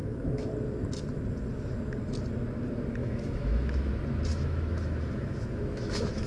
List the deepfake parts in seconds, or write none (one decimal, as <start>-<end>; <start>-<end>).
0.0-0.5; 3.0-3.9; 4.3-6.3